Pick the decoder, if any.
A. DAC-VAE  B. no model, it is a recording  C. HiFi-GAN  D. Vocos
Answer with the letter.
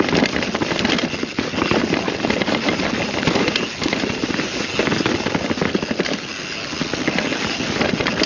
B